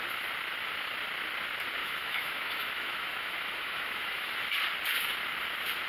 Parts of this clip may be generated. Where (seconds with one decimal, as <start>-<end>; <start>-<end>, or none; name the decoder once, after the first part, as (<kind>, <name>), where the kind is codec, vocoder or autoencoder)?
1.8-4.3 (autoencoder, DAC-VAE)